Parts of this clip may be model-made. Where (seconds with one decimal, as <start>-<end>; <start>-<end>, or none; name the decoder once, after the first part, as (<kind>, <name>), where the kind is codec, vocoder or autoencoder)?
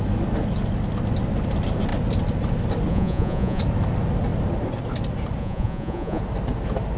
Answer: 2.9-3.6 (vocoder, Vocos); 5.4-6.2